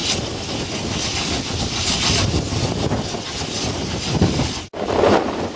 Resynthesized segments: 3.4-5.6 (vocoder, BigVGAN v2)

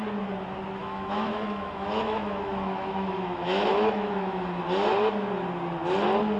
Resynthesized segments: 0.8-4.6 (autoencoder, DAC-VAE)

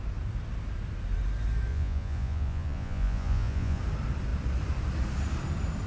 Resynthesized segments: 1.7-3.8 (vocoder, Vocos)

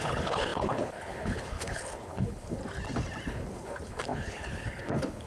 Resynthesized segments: 0.0-2.6 (codec, HILCodec); 3.3-5.3

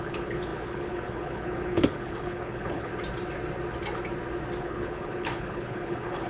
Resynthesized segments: 0.0-2.9 (codec, HILCodec); 4.6-6.3

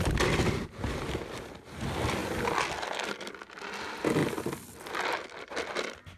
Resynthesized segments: none